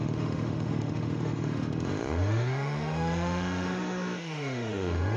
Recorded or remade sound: remade